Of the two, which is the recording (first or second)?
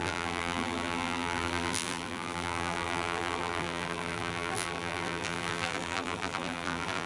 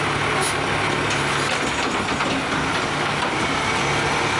second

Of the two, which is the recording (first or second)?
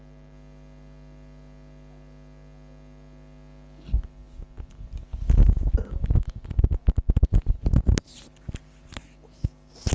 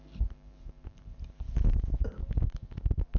first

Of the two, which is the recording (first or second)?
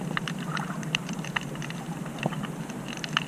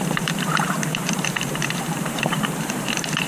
first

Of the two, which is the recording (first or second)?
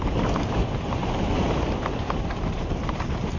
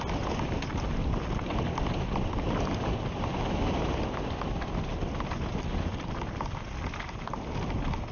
second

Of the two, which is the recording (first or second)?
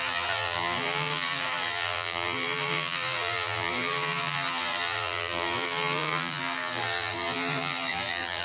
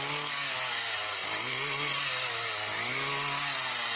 second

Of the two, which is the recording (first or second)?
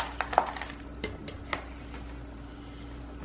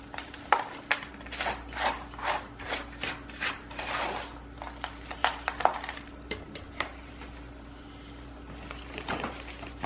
first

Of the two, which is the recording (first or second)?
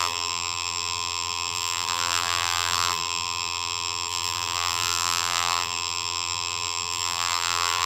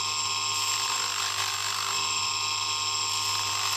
second